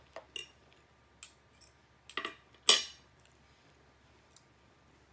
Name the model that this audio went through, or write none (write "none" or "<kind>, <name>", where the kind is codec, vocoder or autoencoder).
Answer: none